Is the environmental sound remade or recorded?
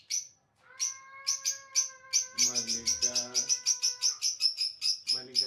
recorded